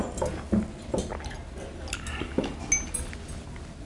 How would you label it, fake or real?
real